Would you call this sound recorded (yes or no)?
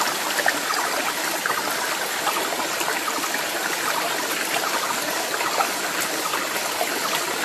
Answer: yes